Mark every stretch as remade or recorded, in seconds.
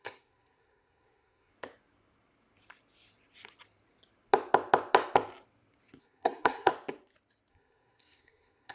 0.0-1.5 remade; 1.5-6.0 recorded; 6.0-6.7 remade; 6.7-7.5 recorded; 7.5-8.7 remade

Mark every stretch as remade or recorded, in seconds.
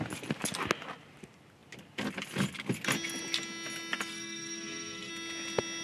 0.0-4.1 recorded; 4.1-5.1 remade; 5.1-5.8 recorded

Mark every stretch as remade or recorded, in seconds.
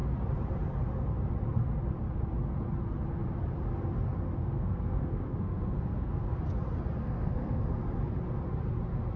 0.0-4.4 recorded; 4.4-6.4 remade; 6.4-7.0 recorded; 7.0-7.6 remade; 7.6-9.2 recorded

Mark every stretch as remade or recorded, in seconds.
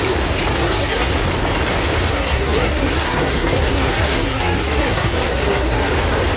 0.0-0.6 recorded; 0.6-1.1 remade; 1.1-2.1 recorded; 2.1-5.9 remade; 5.9-6.4 recorded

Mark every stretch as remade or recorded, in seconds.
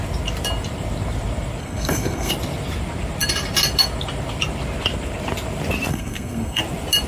0.0-1.6 recorded; 1.6-2.3 remade; 2.3-5.9 recorded; 5.9-6.6 remade; 6.6-7.1 recorded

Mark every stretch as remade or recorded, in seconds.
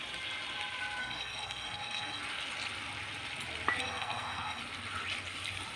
0.0-1.0 recorded; 1.0-2.2 remade; 2.2-3.8 recorded; 3.8-4.6 remade; 4.6-5.8 recorded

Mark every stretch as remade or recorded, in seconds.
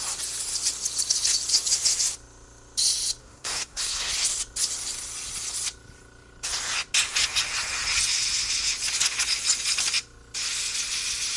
0.0-3.2 recorded; 3.2-4.1 remade; 4.1-11.4 recorded